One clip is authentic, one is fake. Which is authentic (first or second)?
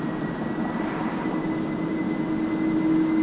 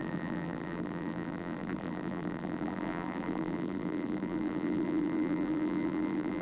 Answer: first